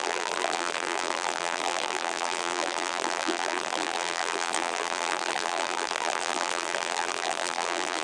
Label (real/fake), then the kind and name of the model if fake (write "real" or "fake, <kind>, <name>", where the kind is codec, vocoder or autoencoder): fake, vocoder, BigVGAN v2